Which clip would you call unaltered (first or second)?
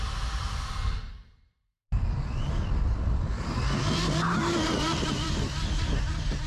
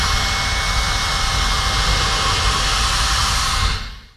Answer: second